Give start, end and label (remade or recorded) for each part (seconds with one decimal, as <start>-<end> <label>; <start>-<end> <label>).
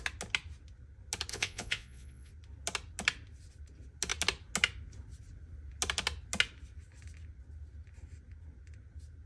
0.0-1.3 recorded; 1.3-2.3 remade; 2.3-9.3 recorded